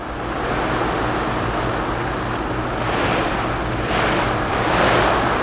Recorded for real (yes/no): yes